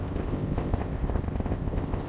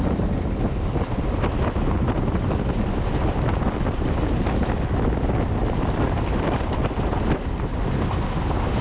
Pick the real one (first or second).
second